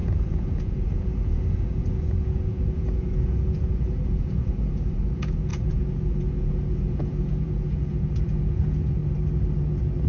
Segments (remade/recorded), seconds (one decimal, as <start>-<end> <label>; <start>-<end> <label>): 0.0-9.0 remade; 9.0-10.1 recorded